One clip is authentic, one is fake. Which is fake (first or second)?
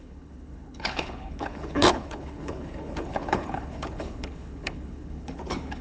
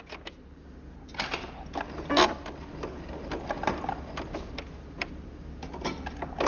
first